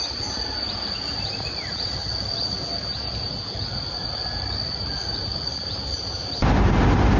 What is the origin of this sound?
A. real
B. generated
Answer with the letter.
A